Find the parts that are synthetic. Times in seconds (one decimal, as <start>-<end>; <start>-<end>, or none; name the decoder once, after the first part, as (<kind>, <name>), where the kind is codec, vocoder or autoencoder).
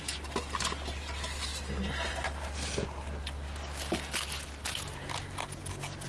none